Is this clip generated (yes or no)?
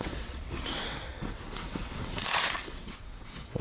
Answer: yes